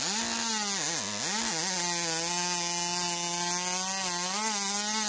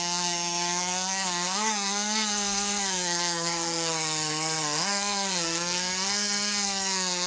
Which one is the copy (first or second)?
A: second